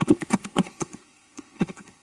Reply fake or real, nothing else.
fake